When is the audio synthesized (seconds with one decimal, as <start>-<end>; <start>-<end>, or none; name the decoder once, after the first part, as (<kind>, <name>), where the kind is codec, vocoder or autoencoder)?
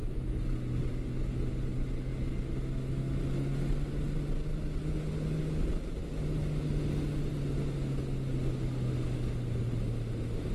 none